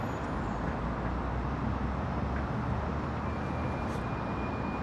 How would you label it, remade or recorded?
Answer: recorded